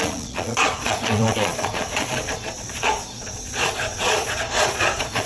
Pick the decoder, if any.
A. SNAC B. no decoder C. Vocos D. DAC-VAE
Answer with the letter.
C